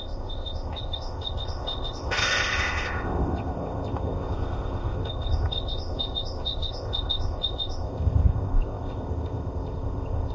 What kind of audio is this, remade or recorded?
remade